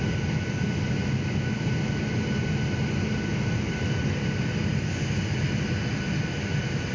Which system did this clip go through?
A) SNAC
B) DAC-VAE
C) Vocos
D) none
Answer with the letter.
D